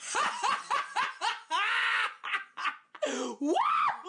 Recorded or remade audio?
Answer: remade